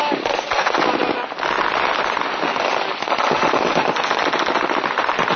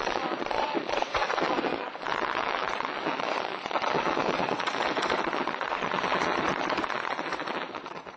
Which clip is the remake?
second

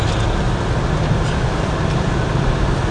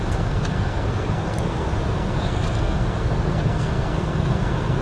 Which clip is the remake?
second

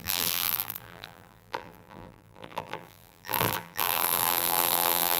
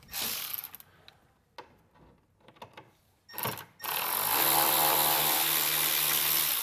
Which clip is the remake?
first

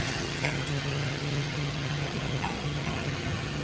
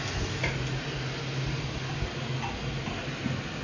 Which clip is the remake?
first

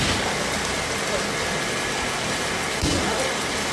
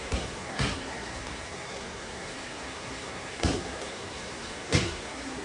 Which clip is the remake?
second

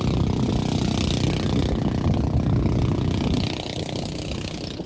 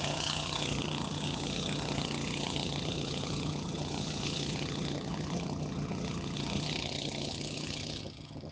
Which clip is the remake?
second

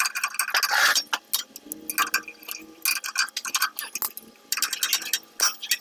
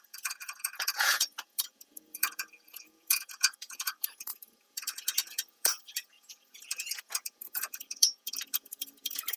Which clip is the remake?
second